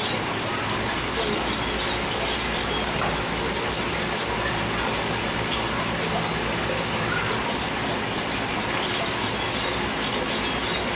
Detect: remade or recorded recorded